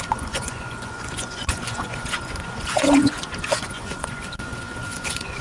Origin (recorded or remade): remade